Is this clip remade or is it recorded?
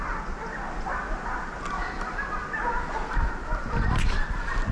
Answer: recorded